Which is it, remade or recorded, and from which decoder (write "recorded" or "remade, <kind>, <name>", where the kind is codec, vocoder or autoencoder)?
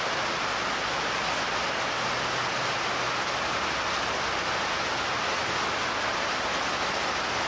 recorded